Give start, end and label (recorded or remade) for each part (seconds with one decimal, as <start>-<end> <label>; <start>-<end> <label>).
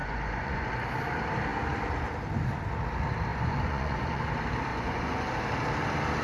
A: 0.0-0.7 remade; 0.7-3.3 recorded; 3.3-4.2 remade; 4.2-4.7 recorded; 4.7-5.3 remade; 5.3-6.2 recorded